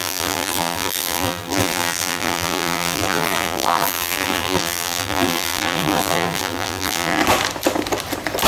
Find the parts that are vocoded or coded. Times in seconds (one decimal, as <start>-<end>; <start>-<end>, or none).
0.0-7.2